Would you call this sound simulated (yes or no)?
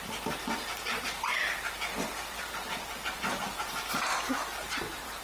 yes